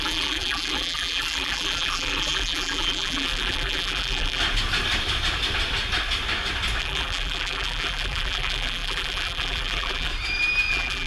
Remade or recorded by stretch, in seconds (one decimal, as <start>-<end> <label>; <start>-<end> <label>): 0.0-4.4 remade; 4.4-6.8 recorded; 6.8-10.1 remade; 10.1-10.7 recorded; 10.7-11.1 remade